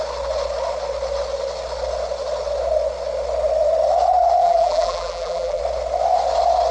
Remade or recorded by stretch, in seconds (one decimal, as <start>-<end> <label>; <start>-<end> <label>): 0.0-4.4 recorded; 4.4-5.6 remade; 5.6-6.7 recorded